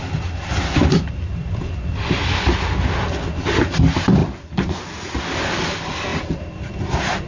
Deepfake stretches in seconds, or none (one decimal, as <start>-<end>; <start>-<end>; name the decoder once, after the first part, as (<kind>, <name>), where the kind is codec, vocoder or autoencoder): 0.8-1.9 (vocoder, BigVGAN v2); 4.2-5.2; 6.1-6.7